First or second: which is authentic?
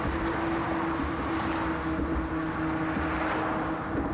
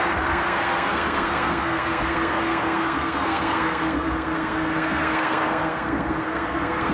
first